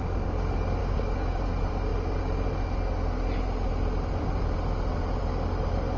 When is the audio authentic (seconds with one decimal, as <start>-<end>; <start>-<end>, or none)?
0.0-0.8; 1.5-6.0